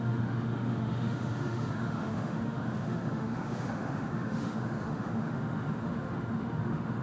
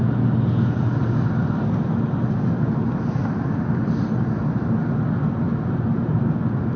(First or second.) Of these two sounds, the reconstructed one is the first